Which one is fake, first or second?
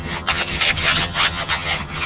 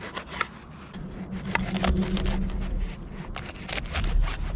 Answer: first